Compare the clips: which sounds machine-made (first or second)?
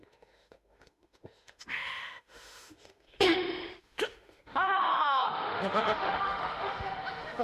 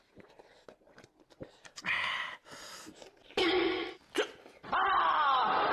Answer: first